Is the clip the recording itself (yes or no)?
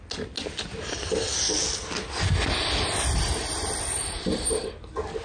yes